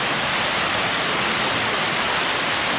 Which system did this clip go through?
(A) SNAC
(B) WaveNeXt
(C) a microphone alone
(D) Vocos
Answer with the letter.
C